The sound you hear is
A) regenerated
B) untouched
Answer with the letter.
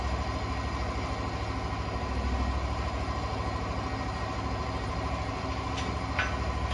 B